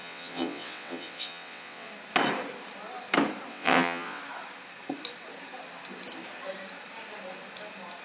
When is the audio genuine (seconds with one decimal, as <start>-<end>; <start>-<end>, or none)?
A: 1.9-3.5; 4.2-8.0